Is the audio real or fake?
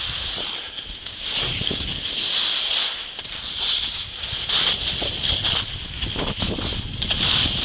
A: real